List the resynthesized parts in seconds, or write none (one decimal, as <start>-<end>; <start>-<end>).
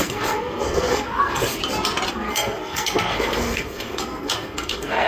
0.0-1.6; 2.1-5.1